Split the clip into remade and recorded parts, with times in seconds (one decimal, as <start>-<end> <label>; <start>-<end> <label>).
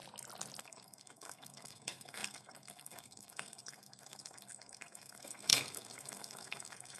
0.0-0.6 recorded; 0.6-7.0 remade